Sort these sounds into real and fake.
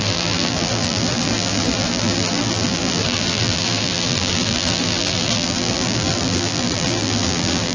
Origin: fake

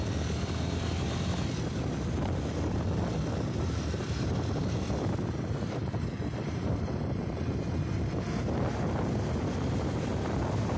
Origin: real